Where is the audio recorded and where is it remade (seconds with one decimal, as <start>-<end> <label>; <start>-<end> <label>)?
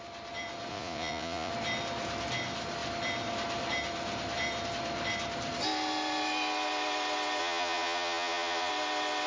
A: 0.0-0.7 recorded; 0.7-1.5 remade; 1.5-7.4 recorded; 7.4-8.7 remade; 8.7-9.3 recorded